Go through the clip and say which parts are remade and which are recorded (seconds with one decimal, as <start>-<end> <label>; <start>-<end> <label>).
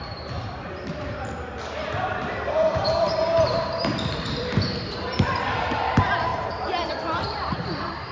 0.0-8.1 remade